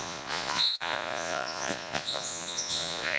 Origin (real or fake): fake